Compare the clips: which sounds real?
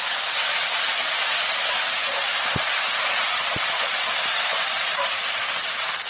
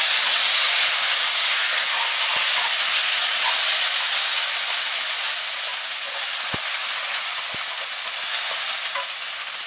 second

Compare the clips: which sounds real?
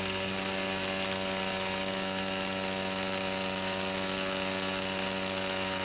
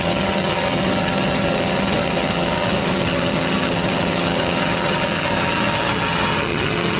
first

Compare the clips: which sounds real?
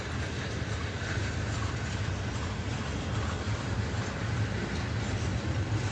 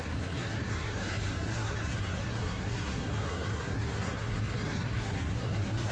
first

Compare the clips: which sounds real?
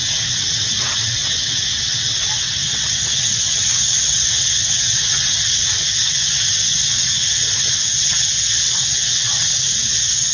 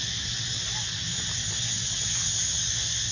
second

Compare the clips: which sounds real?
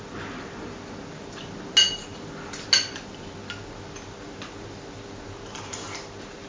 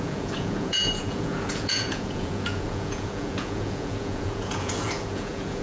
first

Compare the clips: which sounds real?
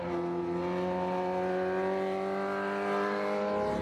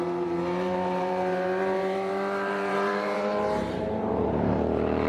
first